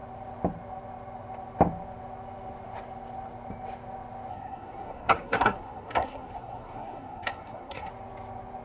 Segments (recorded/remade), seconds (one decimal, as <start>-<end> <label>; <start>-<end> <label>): 0.0-4.3 recorded; 4.3-7.9 remade; 7.9-8.6 recorded